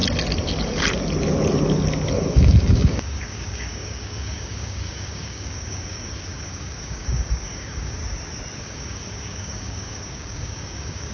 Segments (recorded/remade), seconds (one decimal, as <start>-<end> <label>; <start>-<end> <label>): 0.0-2.1 recorded; 2.1-8.0 remade; 8.0-8.6 recorded; 8.6-11.1 remade